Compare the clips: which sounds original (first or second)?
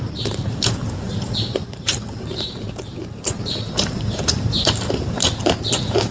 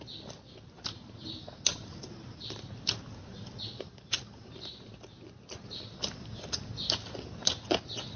second